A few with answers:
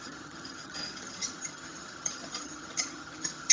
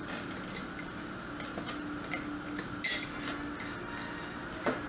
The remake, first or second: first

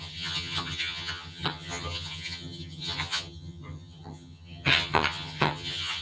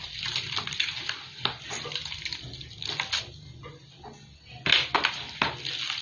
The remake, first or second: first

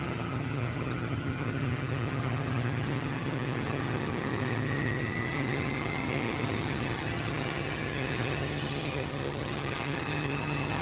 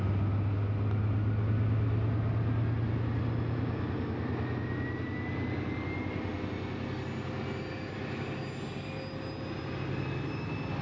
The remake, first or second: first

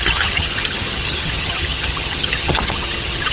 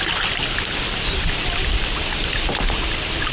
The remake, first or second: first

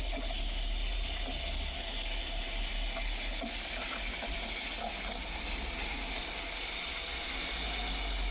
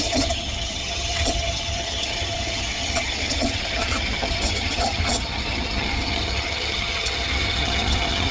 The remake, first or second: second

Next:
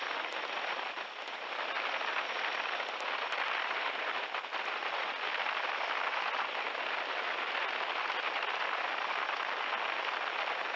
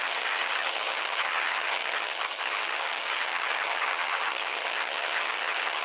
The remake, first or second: second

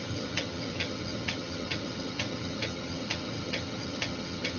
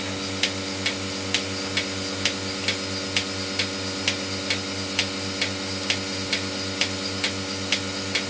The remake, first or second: first